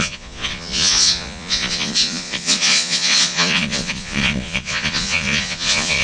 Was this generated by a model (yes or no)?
yes